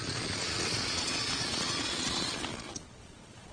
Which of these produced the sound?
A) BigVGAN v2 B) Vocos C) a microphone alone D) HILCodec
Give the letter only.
B